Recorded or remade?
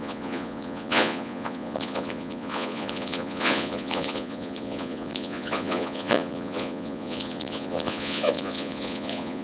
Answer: remade